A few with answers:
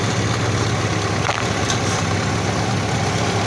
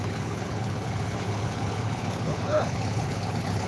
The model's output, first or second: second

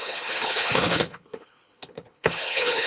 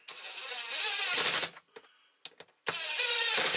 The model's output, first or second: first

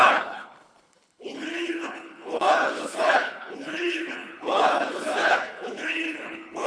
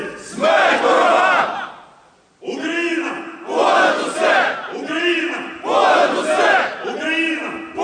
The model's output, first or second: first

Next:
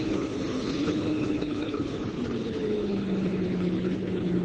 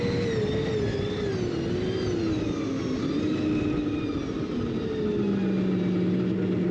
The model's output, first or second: first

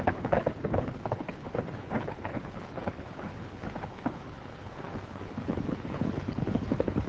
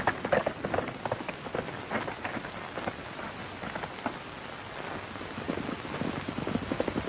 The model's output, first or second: first